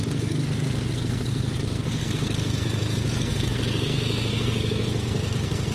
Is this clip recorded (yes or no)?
no